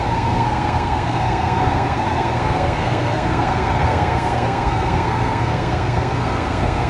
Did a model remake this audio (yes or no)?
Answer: yes